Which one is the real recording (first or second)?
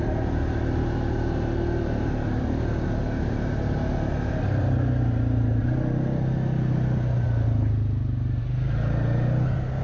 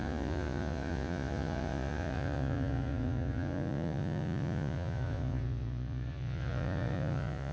first